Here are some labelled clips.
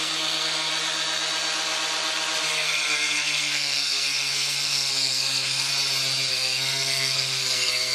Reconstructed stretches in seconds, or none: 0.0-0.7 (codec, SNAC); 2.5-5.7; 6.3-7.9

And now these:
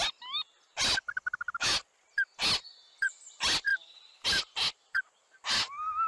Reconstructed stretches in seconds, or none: none

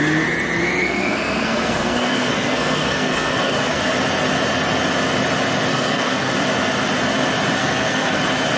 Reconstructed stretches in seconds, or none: 0.8-3.8 (codec, SNAC); 5.7-6.3; 7.6-8.2

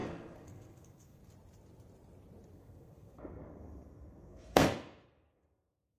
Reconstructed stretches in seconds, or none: 0.0-1.2 (codec, SNAC); 2.5-6.0

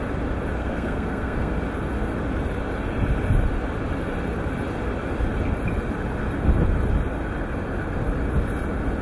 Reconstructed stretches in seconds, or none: 0.6-1.5 (codec, SNAC)

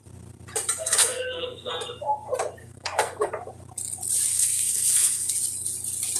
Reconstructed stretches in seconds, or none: 0.8-1.7 (codec, SNAC); 2.6-3.3; 4.3-5.3

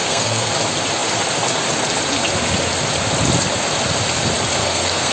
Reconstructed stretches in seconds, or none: 0.0-0.5 (codec, SNAC); 4.6-5.1